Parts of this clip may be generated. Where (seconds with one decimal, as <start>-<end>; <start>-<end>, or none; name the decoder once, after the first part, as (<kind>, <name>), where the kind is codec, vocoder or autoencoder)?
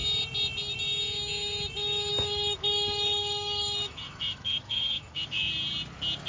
2.1-5.5 (autoencoder, DAC-VAE)